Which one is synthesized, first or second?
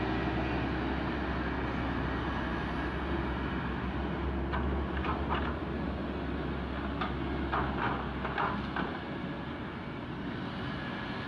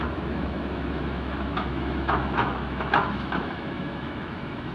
second